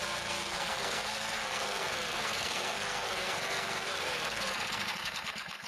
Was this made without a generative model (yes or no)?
no